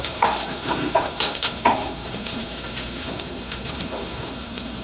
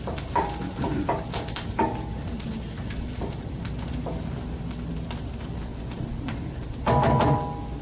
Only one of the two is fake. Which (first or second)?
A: first